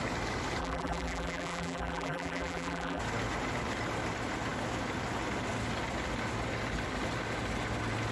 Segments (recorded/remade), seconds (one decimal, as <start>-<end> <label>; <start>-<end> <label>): 0.0-0.6 recorded; 0.6-3.0 remade; 3.0-8.1 recorded

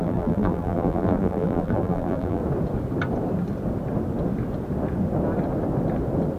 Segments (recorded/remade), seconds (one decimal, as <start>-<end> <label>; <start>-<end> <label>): 0.0-2.4 remade; 2.4-6.4 recorded

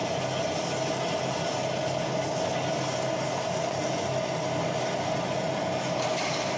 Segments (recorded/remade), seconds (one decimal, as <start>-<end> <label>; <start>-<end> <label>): 0.0-0.6 recorded; 0.6-1.6 remade; 1.6-4.6 recorded; 4.6-6.6 remade

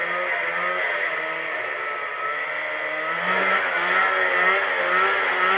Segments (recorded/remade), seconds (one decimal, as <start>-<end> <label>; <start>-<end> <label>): 0.0-5.6 recorded